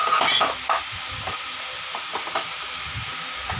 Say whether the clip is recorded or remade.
recorded